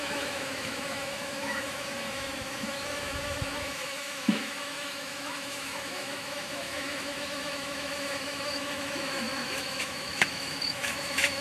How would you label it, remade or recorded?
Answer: remade